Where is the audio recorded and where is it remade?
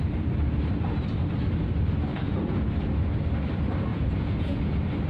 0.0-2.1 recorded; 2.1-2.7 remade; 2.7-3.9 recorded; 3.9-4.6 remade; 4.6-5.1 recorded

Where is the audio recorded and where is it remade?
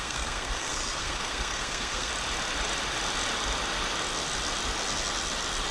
0.0-2.1 remade; 2.1-5.7 recorded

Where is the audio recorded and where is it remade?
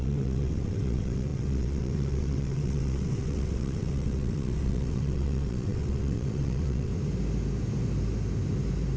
0.0-6.9 remade; 6.9-9.0 recorded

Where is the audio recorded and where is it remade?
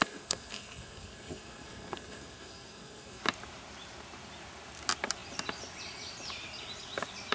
0.0-3.2 remade; 3.2-7.3 recorded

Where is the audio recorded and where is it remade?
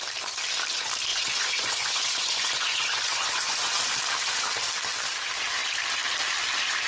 0.0-1.1 recorded; 1.1-4.0 remade; 4.0-6.9 recorded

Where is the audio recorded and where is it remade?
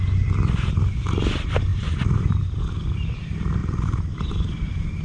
0.0-1.7 recorded; 1.7-2.6 remade; 2.6-3.6 recorded; 3.6-4.3 remade; 4.3-5.0 recorded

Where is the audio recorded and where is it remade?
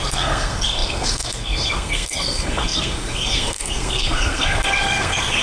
0.0-5.4 remade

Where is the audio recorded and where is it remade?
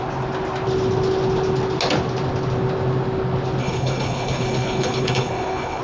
0.0-3.6 recorded; 3.6-5.8 remade